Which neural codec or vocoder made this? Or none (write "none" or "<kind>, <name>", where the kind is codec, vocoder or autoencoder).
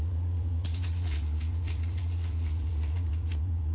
vocoder, Vocos